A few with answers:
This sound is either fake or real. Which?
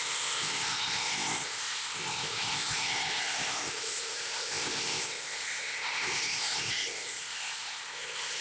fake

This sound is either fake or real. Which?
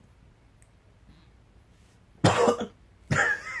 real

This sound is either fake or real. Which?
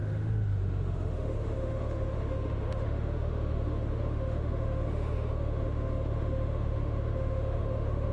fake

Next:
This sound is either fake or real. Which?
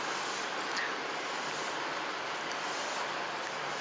real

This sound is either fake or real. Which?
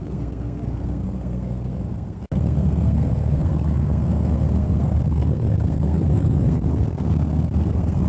fake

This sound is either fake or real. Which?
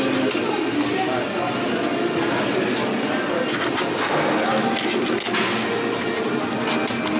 real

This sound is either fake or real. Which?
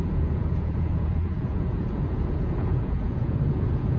fake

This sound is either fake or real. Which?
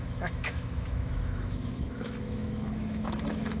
fake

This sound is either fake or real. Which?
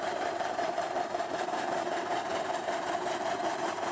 fake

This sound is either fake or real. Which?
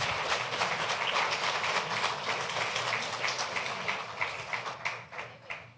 real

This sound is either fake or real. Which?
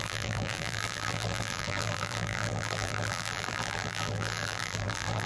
fake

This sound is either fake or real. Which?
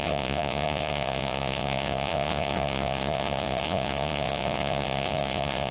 fake